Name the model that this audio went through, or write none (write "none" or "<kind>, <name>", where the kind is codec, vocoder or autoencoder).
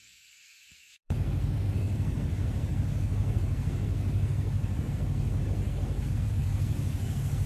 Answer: codec, SNAC